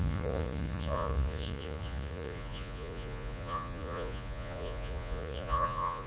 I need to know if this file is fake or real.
fake